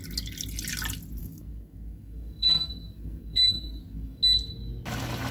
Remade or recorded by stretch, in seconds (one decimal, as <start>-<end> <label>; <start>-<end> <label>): 0.0-1.2 recorded; 1.2-4.2 remade; 4.2-5.3 recorded